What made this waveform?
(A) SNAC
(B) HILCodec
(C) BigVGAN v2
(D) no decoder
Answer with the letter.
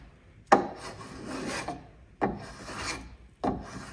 D